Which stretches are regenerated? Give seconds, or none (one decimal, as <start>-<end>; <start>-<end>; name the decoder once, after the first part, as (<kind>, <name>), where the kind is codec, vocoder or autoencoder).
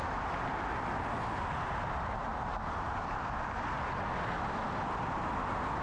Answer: none